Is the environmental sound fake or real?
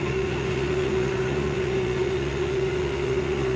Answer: fake